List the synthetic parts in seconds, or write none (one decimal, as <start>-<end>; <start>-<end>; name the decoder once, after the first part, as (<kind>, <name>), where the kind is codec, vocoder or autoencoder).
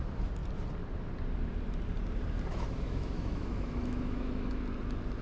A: 2.5-4.6 (autoencoder, DAC-VAE)